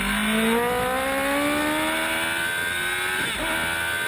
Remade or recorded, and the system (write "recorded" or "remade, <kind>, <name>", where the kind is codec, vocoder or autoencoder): recorded